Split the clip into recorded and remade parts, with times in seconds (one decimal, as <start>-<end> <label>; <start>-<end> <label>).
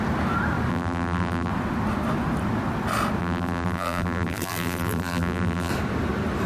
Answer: 0.0-0.7 recorded; 0.7-1.5 remade; 1.5-3.2 recorded; 3.2-5.7 remade; 5.7-6.5 recorded